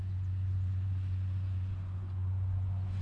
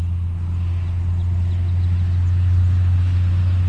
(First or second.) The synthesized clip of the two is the first